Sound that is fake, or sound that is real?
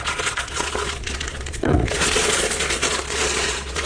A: fake